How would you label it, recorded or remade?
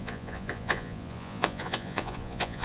remade